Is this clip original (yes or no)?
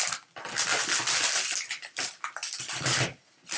yes